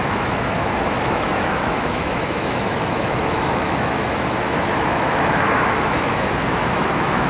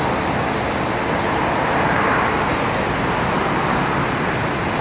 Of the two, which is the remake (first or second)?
first